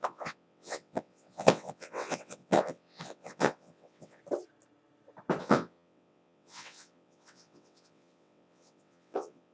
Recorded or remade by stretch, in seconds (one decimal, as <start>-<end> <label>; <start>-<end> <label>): 0.0-4.2 remade; 4.2-5.4 recorded; 5.4-9.5 remade